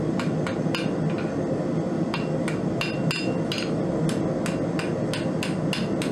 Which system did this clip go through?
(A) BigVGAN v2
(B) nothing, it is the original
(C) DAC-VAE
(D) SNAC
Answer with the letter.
B